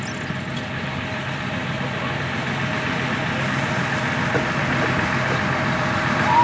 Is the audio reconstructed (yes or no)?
no